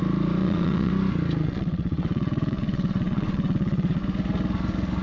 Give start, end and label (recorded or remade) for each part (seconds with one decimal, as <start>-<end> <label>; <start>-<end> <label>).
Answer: 0.0-0.4 recorded; 0.4-0.9 remade; 0.9-1.4 recorded; 1.4-4.0 remade; 4.0-5.0 recorded